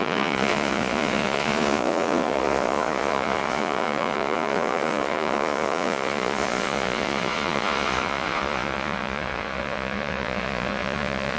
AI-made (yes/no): yes